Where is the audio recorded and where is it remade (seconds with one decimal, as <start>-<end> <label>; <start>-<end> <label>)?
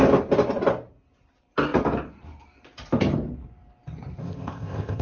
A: 0.0-4.2 recorded; 4.2-5.0 remade